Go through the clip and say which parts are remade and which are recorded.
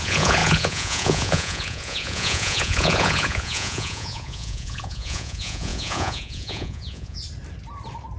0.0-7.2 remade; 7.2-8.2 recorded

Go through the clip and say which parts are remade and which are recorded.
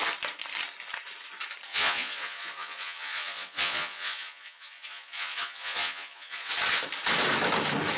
0.0-1.7 recorded; 1.7-6.5 remade; 6.5-8.0 recorded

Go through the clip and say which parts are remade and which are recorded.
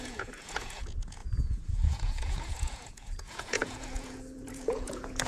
0.0-5.3 remade